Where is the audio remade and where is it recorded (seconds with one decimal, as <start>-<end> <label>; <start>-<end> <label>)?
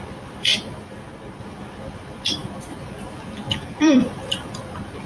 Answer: 0.0-0.5 remade; 0.5-1.4 recorded; 1.4-5.1 remade